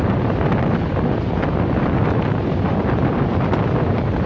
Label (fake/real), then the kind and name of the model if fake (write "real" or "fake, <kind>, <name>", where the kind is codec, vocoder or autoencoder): real